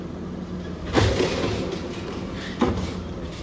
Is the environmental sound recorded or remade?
recorded